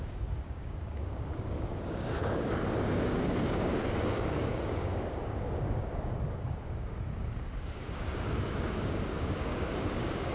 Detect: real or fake fake